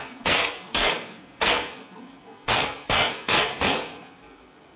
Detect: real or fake fake